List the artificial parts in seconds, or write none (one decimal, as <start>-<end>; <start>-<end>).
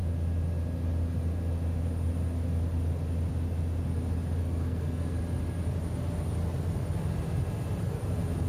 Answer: 4.4-5.2